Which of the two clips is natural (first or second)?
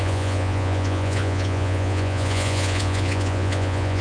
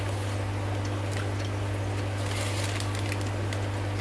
second